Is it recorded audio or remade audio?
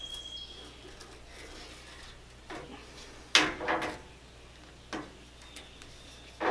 recorded